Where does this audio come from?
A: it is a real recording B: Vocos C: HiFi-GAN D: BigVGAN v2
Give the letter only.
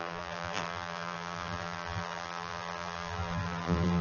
D